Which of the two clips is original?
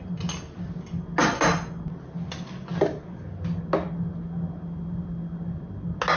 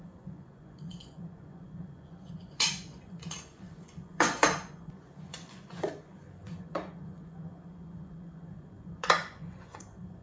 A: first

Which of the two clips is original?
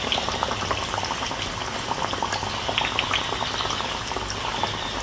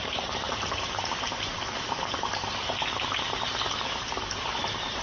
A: first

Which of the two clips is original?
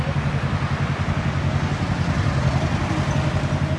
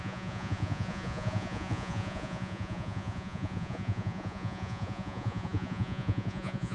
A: first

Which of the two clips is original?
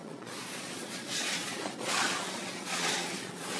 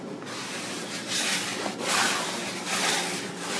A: second